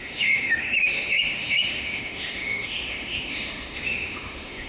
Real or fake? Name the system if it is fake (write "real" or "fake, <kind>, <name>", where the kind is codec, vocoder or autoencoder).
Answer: fake, autoencoder, DAC-VAE